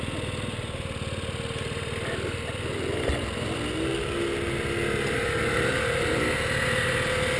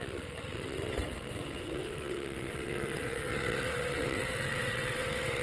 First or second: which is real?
first